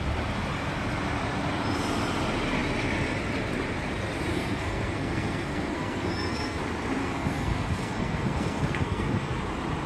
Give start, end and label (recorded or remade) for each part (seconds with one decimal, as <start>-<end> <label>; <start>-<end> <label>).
0.0-4.3 recorded; 4.3-6.6 remade; 6.6-7.0 recorded; 7.0-9.4 remade; 9.4-9.9 recorded